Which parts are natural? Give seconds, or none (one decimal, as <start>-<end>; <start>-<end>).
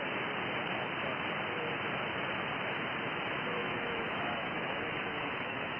0.0-3.6